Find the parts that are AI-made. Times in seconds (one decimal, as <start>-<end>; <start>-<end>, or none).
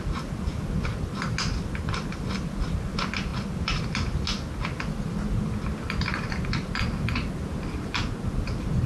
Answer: none